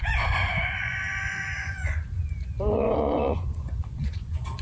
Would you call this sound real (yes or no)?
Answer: no